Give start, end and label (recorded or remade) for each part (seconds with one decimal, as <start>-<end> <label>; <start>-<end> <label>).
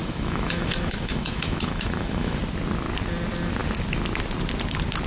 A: 0.0-2.4 remade; 2.4-5.1 recorded